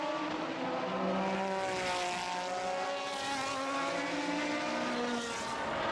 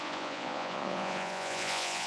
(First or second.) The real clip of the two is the first